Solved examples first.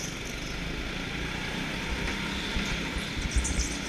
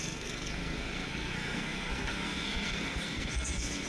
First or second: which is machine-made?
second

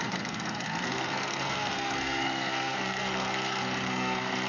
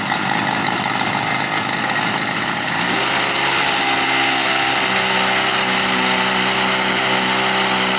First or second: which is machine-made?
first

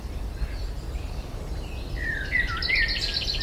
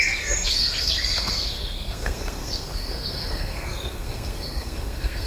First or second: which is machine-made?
second